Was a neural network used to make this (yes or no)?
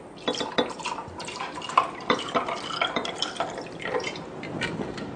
no